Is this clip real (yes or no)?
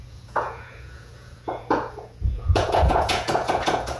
no